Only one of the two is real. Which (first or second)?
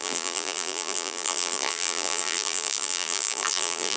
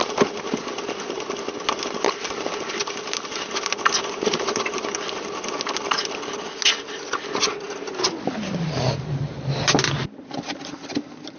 second